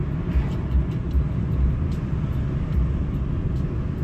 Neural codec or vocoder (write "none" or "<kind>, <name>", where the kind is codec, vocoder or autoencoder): none